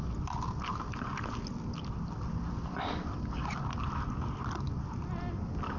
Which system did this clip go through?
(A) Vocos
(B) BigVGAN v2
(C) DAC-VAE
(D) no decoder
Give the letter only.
D